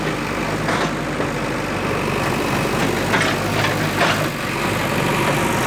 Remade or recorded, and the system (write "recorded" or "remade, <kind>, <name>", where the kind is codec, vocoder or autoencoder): recorded